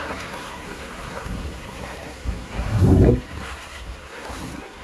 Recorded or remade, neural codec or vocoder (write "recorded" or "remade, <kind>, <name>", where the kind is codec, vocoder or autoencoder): remade, codec, SNAC